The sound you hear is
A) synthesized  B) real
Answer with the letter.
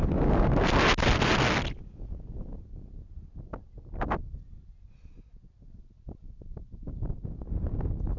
B